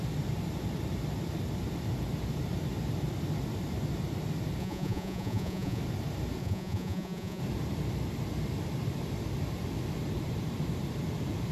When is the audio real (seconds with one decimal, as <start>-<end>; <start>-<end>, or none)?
0.0-4.6; 5.8-6.4; 7.4-11.5